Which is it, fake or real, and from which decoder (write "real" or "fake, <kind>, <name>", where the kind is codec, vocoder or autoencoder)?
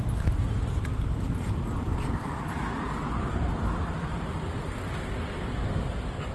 real